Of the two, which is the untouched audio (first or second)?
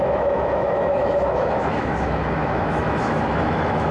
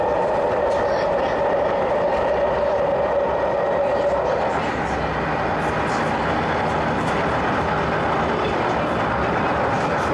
second